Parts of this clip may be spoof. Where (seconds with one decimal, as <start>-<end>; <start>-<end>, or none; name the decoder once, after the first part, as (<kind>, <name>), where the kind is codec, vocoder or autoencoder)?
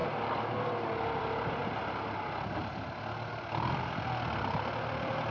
none